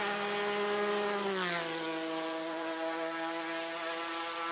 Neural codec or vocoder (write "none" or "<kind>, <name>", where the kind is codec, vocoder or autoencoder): none